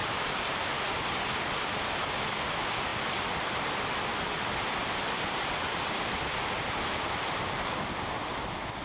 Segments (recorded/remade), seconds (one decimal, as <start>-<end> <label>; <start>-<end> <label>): 0.0-2.9 recorded; 2.9-7.1 remade; 7.1-8.8 recorded